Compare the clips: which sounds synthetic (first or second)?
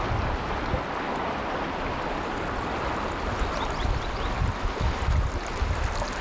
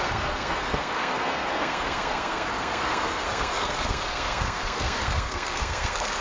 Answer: second